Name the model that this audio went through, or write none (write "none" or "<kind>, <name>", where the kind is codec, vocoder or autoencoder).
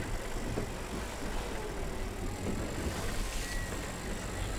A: none